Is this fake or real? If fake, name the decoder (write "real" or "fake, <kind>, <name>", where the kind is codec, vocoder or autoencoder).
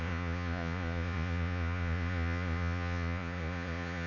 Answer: fake, vocoder, Vocos